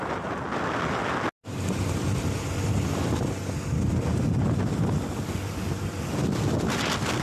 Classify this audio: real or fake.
real